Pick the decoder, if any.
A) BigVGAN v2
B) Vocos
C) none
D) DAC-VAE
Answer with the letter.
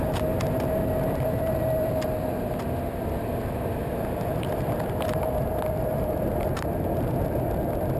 A